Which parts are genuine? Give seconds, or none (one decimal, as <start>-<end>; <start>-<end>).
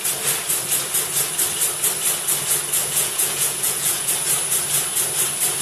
0.0-2.8; 4.1-5.6